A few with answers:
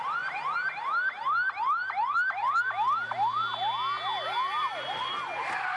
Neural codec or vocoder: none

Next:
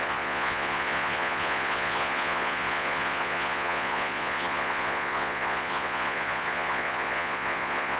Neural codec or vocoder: vocoder, Vocos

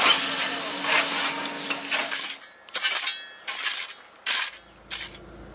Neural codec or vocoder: none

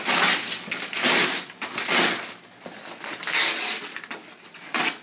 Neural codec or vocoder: none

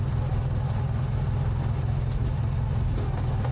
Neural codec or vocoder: none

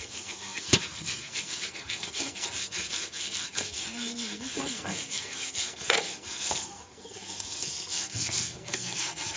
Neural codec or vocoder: codec, SNAC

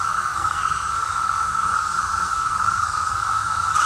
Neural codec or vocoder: codec, SNAC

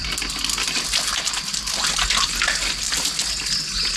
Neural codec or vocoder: none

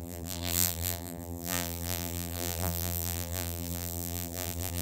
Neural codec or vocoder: vocoder, BigVGAN v2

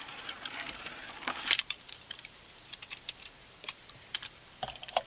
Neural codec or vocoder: vocoder, BigVGAN v2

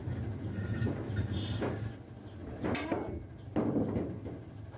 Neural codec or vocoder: none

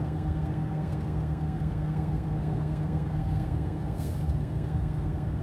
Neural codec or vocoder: codec, SNAC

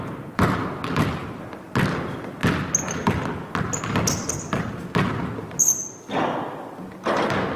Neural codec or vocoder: none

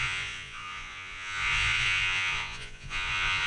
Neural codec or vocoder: vocoder, Vocos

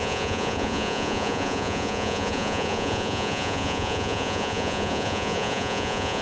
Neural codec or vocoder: vocoder, Vocos